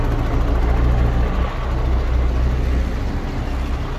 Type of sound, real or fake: real